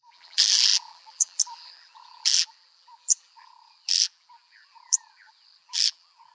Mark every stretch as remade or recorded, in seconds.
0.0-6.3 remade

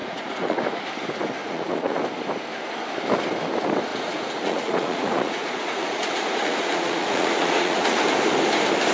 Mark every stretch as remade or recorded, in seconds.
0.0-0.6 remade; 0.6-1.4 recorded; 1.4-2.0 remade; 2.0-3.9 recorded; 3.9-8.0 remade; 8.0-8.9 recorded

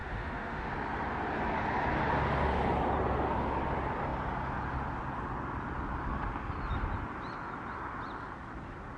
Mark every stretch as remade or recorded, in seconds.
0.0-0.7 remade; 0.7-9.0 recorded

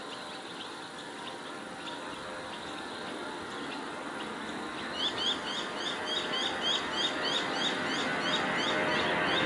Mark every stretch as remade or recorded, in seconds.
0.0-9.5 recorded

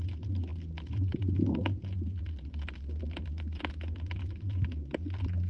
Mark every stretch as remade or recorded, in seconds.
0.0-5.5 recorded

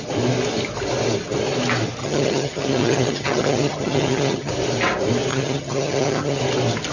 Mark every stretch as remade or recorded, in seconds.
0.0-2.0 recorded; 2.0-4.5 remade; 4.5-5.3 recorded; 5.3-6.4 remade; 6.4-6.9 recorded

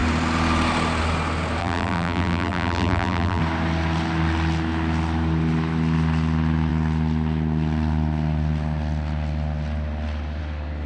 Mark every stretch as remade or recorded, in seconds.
0.0-1.6 recorded; 1.6-3.4 remade; 3.4-10.9 recorded